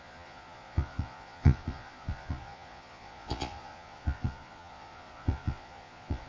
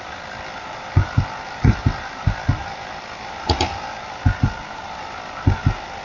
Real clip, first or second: second